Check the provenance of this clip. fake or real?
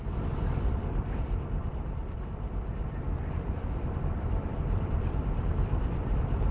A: fake